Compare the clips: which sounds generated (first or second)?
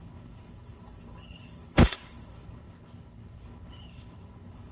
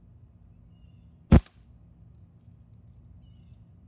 first